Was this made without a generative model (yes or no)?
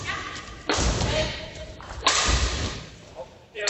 no